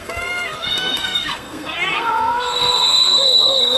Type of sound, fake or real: fake